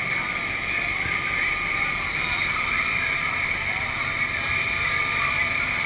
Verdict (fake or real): fake